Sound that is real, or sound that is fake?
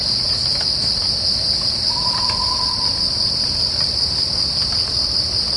real